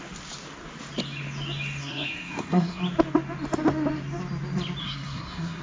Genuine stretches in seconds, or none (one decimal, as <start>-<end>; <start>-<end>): 0.0-1.8; 2.8-4.8